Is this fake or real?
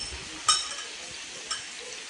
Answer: real